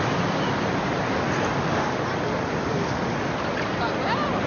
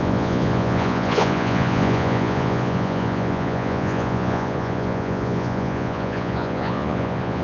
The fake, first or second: second